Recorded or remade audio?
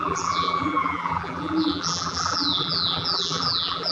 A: remade